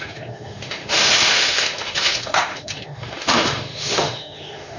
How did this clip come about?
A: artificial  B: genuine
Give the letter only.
A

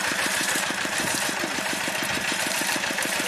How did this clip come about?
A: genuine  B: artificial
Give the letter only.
B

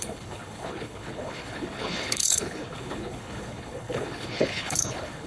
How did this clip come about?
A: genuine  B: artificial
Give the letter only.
B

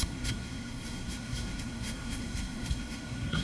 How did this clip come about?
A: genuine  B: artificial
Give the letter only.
B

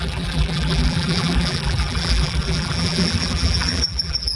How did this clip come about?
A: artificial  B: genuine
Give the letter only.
A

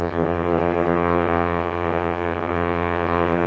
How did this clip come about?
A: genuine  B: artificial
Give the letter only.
B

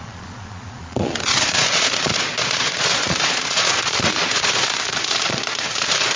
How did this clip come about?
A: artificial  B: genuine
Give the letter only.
A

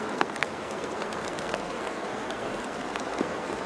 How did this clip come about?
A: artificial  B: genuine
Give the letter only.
A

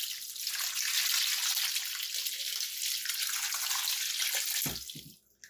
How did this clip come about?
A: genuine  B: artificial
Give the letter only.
A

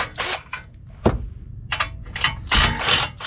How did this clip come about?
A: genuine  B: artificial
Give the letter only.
A